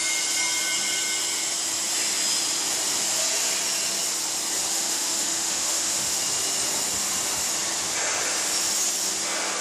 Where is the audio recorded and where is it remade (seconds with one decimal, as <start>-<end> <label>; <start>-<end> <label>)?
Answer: 0.0-4.7 recorded; 4.7-6.2 remade; 6.2-9.6 recorded